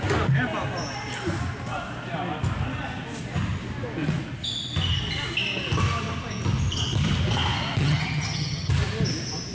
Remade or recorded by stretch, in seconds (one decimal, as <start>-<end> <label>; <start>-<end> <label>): 0.0-7.8 recorded; 7.8-8.7 remade; 8.7-9.5 recorded